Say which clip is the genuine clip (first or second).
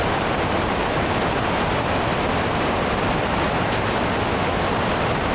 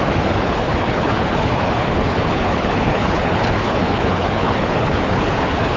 first